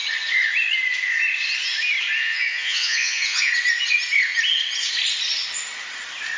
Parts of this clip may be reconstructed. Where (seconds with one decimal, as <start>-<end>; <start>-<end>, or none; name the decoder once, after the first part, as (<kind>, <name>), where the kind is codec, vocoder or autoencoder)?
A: 2.2-3.5 (vocoder, Vocos)